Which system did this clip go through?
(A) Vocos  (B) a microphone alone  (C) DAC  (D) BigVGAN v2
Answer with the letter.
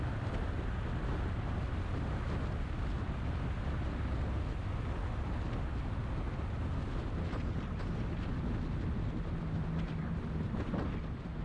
B